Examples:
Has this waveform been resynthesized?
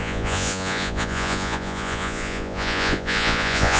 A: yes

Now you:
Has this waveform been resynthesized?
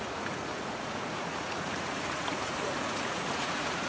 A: yes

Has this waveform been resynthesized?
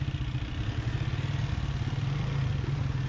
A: no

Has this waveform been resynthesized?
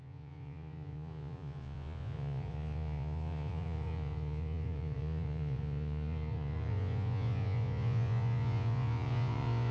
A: yes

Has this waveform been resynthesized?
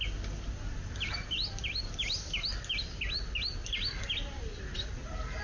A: no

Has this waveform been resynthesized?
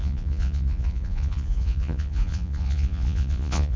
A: yes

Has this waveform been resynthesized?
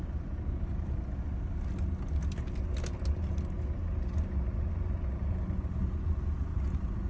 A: no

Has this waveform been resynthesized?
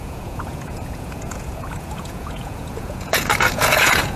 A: yes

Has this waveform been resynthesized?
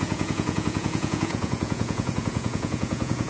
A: yes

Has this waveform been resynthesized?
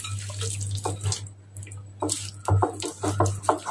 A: no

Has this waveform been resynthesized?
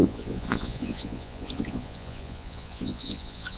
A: yes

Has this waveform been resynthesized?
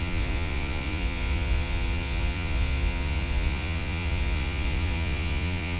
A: yes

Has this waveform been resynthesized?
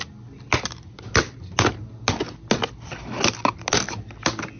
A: no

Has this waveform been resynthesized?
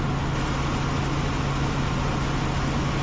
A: no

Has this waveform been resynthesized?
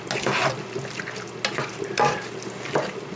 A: no